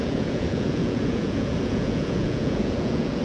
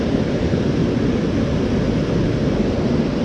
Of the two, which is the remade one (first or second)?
first